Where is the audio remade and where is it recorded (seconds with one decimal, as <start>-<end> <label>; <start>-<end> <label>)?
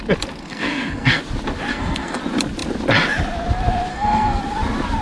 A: 0.0-0.4 recorded; 0.4-1.2 remade; 1.2-1.7 recorded; 1.7-2.2 remade; 2.2-3.9 recorded; 3.9-4.4 remade; 4.4-5.0 recorded